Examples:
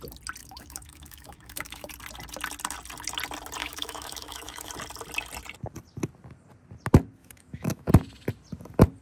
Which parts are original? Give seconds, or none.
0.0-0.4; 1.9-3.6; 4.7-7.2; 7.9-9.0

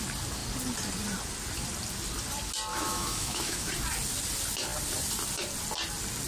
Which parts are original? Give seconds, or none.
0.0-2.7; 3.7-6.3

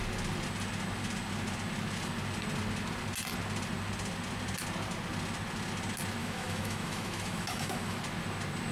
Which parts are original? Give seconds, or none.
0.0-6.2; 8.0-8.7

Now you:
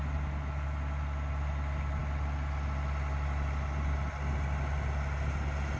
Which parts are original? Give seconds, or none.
0.0-5.8

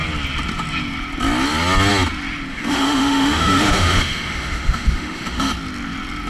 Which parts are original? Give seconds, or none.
0.0-2.5; 5.5-6.3

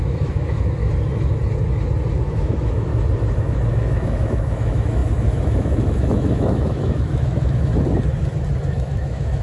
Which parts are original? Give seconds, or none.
0.8-2.1; 2.9-3.4; 7.7-8.7